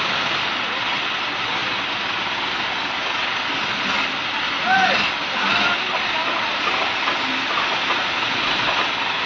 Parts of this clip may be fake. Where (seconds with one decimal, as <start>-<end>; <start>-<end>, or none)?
none